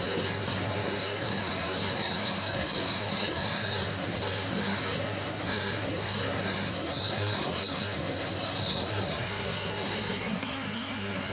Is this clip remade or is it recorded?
remade